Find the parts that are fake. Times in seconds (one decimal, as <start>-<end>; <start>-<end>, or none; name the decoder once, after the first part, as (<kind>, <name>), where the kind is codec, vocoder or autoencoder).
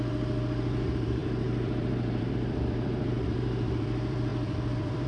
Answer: 0.0-5.1 (vocoder, BigVGAN v2)